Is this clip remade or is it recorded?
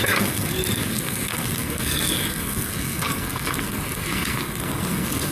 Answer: remade